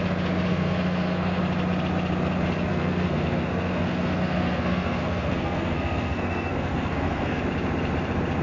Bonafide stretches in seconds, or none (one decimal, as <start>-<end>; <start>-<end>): 0.0-0.5; 1.4-2.7; 7.4-8.4